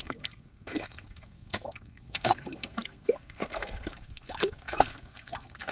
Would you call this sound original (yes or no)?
no